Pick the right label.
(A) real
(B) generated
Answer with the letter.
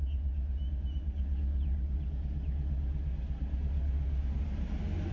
A